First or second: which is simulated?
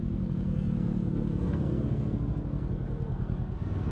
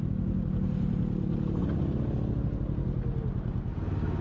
first